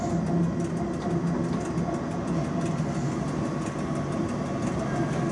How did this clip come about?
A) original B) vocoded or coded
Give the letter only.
A